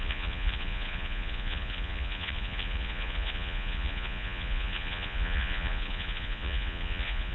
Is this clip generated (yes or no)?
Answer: yes